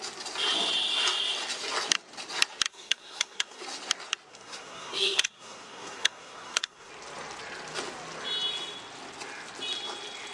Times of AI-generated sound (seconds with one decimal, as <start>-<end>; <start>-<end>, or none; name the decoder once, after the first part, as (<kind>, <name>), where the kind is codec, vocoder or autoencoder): 2.7-3.6 (codec, SNAC); 4.3-6.9